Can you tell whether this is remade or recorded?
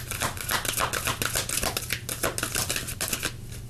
recorded